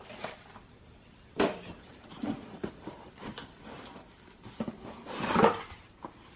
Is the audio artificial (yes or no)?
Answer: yes